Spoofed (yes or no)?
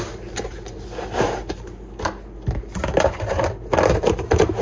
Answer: no